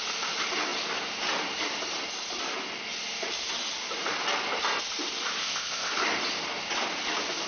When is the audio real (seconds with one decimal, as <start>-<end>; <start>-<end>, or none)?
0.0-5.4; 5.9-7.5